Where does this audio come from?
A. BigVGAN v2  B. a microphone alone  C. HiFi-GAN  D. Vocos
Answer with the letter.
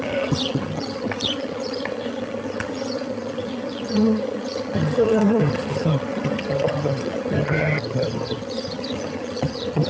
C